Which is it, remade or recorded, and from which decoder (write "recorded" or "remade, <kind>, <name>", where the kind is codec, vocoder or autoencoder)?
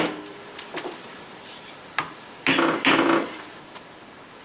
recorded